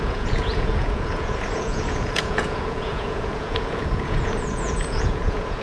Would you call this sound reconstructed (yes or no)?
yes